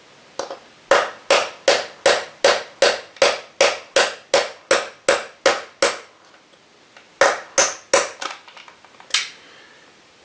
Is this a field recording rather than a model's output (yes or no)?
yes